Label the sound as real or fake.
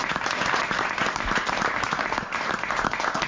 fake